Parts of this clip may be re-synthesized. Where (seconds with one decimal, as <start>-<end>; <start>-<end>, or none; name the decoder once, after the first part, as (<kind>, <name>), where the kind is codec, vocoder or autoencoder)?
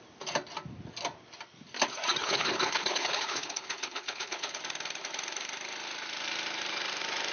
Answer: 2.2-4.6 (codec, HILCodec)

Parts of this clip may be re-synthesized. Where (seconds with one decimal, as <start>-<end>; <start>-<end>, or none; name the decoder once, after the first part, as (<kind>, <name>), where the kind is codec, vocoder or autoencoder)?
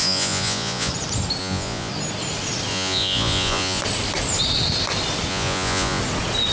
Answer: 0.0-0.9 (vocoder, Vocos); 1.4-1.9; 2.7-3.8; 5.3-6.0